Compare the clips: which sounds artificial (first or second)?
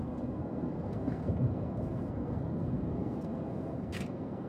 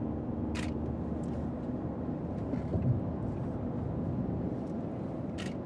first